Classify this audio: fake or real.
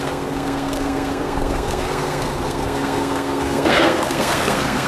fake